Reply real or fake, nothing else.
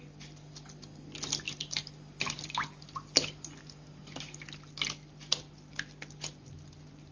real